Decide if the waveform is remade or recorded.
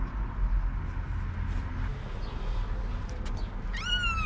recorded